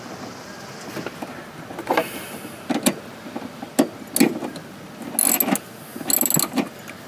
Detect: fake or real real